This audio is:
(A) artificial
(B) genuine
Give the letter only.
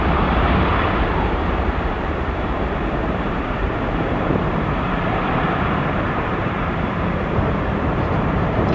A